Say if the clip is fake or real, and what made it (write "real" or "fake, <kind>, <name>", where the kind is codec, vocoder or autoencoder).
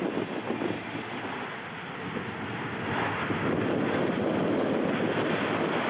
real